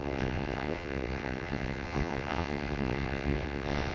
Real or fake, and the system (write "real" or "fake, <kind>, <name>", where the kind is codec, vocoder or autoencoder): fake, vocoder, WaveNeXt